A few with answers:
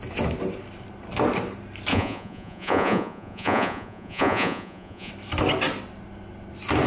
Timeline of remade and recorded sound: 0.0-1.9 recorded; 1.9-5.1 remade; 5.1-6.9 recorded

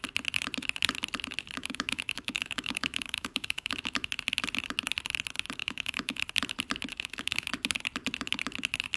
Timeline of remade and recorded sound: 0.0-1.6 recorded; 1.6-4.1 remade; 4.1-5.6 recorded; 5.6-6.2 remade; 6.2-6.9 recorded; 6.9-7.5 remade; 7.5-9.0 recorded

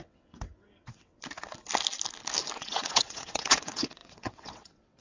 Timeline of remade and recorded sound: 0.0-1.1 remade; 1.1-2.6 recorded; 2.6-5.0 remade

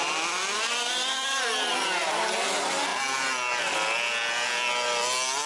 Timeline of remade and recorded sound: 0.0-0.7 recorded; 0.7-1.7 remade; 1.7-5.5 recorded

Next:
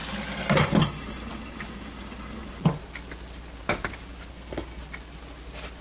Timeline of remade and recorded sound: 0.0-4.3 recorded; 4.3-4.8 remade; 4.8-5.8 recorded

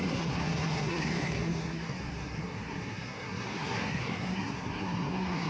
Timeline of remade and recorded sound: 0.0-5.5 remade

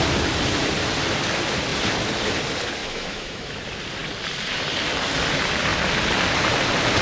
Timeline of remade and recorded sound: 0.0-2.8 recorded; 2.8-3.6 remade; 3.6-7.0 recorded